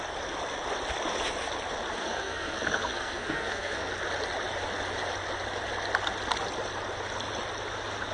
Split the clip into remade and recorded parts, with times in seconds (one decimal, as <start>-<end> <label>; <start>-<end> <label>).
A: 0.0-2.0 recorded; 2.0-3.9 remade; 3.9-8.1 recorded